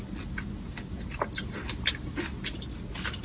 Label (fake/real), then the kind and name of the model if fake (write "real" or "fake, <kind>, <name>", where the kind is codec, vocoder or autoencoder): real